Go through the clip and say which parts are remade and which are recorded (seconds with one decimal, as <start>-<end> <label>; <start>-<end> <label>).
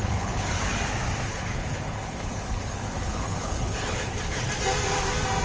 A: 0.0-0.6 remade; 0.6-1.3 recorded; 1.3-4.5 remade; 4.5-5.4 recorded